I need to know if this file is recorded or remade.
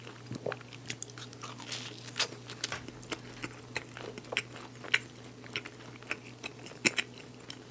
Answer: recorded